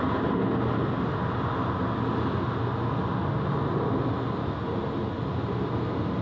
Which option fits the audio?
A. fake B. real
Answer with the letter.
B